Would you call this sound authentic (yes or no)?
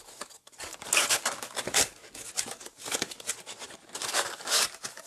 no